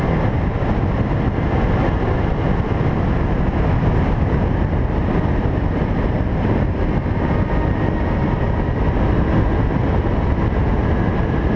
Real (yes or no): yes